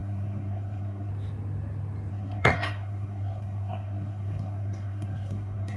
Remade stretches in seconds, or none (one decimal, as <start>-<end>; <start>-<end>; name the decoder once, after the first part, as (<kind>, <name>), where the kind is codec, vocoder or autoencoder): 0.0-1.1 (codec, SNAC); 2.1-5.8